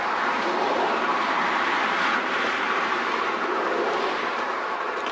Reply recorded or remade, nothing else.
remade